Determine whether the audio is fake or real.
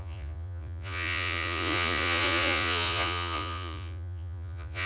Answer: fake